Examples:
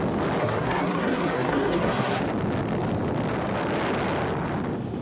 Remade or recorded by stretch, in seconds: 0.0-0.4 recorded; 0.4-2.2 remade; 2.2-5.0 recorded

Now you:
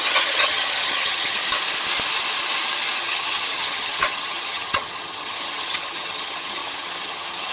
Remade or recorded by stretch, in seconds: 0.0-1.4 remade; 1.4-3.0 recorded; 3.0-7.5 remade

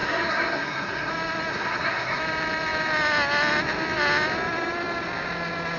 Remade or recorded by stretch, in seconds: 0.0-1.1 remade; 1.1-1.5 recorded; 1.5-2.2 remade; 2.2-5.8 recorded

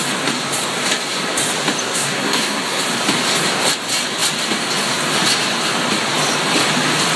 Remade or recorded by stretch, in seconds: 0.0-1.8 recorded; 1.8-2.8 remade; 2.8-7.2 recorded